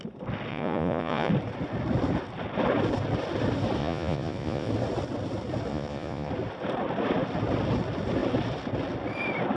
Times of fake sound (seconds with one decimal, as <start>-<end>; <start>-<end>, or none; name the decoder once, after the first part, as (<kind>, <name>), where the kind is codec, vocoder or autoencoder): 0.5-1.3 (vocoder, Vocos); 3.8-4.7; 5.7-6.3